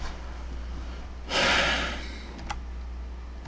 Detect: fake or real real